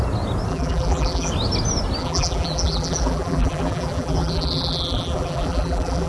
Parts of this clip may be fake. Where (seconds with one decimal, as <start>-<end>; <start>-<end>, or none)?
0.5-1.3; 2.0-6.1